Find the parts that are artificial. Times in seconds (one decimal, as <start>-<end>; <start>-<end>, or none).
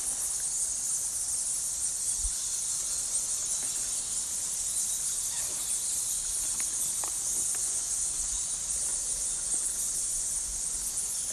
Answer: 7.6-8.5; 8.9-11.3